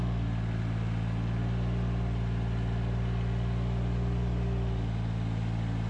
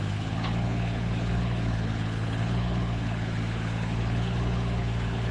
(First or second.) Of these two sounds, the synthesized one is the second